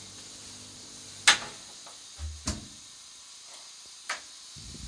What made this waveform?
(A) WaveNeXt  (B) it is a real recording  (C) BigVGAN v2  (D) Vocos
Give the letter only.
B